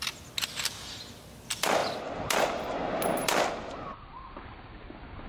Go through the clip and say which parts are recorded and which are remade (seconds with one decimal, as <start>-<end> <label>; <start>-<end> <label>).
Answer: 0.0-5.3 recorded